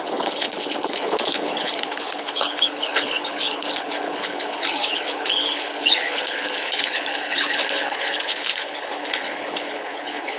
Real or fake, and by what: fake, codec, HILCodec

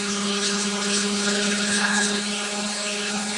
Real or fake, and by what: fake, codec, HILCodec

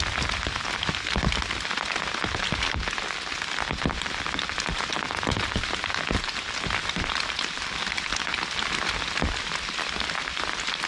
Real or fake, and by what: real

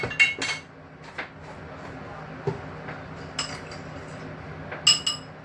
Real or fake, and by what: real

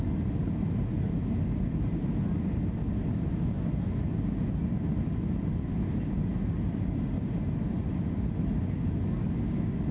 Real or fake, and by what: real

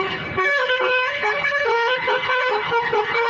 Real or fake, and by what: fake, codec, HILCodec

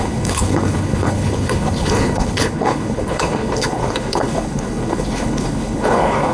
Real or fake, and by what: fake, codec, HILCodec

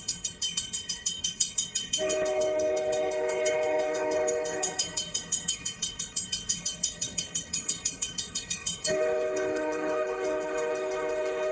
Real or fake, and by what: fake, codec, HILCodec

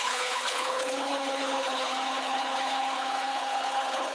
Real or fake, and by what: fake, codec, HILCodec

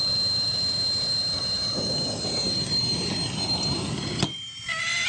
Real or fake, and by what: real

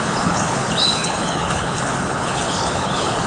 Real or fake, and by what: fake, codec, HILCodec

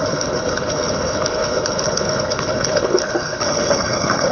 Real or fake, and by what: fake, codec, HILCodec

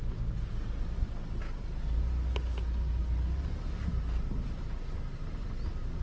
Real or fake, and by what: real